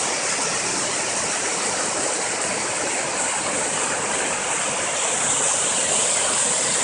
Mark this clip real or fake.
real